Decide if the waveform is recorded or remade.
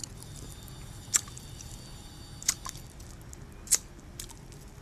recorded